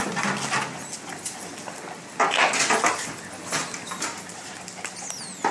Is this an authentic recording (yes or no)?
yes